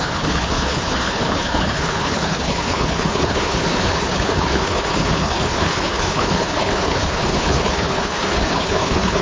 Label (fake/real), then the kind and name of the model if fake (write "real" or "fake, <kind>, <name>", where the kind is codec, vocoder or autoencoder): fake, codec, HILCodec